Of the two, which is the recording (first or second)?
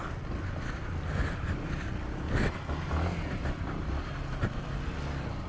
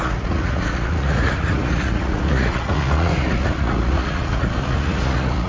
first